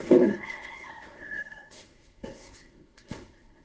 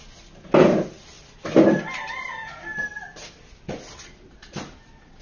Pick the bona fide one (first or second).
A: second